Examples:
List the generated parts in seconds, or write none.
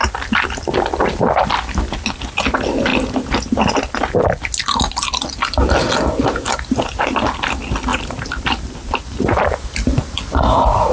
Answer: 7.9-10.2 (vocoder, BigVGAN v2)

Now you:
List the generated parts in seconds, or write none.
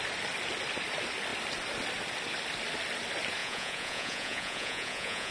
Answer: 3.4-5.3 (vocoder, Vocos)